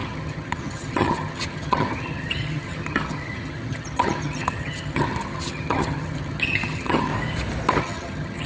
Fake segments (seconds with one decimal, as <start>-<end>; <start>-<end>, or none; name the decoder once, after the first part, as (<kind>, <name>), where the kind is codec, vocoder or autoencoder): 0.0-7.1 (vocoder, HiFi-GAN); 7.8-8.5